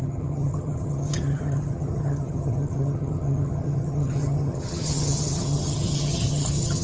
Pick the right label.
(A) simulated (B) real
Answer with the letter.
A